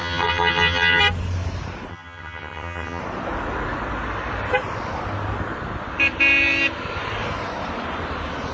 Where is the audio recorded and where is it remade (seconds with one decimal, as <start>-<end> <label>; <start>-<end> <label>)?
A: 0.0-1.0 remade; 1.0-1.9 recorded; 1.9-3.0 remade; 3.0-8.5 recorded